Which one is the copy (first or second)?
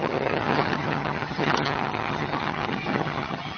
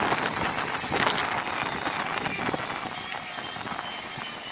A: first